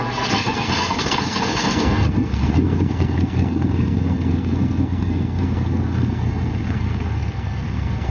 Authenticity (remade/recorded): remade